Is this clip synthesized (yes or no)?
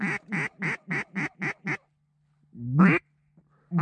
no